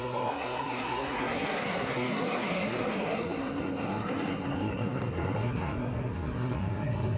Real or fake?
fake